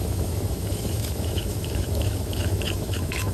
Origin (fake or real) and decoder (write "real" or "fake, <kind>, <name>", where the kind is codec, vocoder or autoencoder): fake, autoencoder, DAC-VAE